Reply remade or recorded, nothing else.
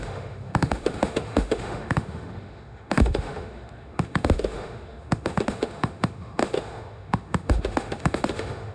remade